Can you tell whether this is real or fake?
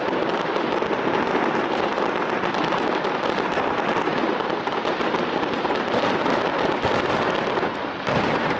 real